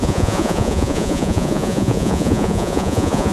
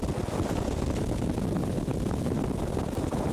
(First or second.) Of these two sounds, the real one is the second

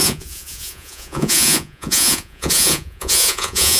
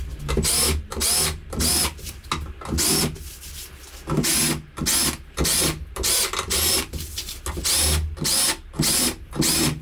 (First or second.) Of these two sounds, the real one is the second